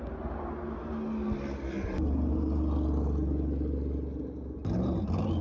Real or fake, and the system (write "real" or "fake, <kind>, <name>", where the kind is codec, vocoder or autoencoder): real